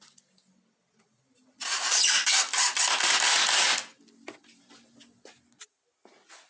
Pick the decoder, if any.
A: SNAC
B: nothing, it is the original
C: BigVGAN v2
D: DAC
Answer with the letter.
B